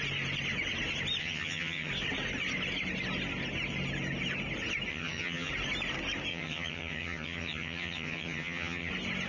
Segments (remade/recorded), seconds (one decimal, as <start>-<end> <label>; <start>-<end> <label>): 0.0-1.2 recorded; 1.2-1.9 remade; 1.9-4.9 recorded; 4.9-5.5 remade; 5.5-6.3 recorded; 6.3-8.9 remade; 8.9-9.3 recorded